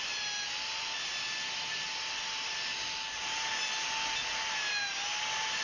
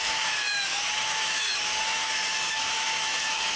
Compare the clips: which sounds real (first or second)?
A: first